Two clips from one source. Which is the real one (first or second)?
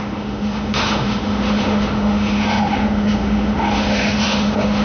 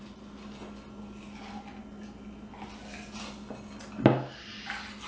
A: second